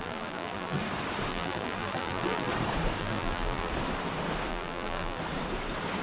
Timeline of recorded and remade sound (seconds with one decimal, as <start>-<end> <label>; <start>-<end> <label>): 0.0-0.8 remade; 0.8-1.3 recorded; 1.3-2.5 remade; 2.5-3.0 recorded; 3.0-3.7 remade; 3.7-4.5 recorded; 4.5-5.2 remade; 5.2-6.0 recorded